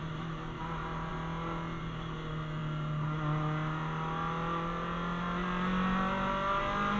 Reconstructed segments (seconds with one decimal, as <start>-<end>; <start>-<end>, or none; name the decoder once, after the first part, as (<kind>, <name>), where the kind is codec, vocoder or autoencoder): none